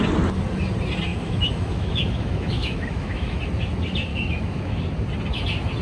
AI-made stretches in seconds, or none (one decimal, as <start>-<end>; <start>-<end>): 1.1-3.4; 4.1-4.8